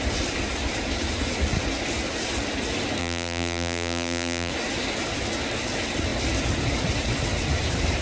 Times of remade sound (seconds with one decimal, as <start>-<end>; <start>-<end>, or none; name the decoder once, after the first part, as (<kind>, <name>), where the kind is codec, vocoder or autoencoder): 3.0-4.5 (vocoder, BigVGAN v2)